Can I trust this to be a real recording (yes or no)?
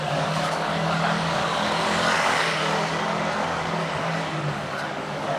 no